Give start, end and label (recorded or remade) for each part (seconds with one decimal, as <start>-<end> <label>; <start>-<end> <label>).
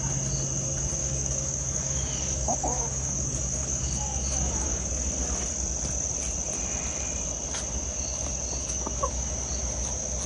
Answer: 0.0-1.0 recorded; 1.0-4.9 remade; 4.9-8.6 recorded; 8.6-9.3 remade; 9.3-10.3 recorded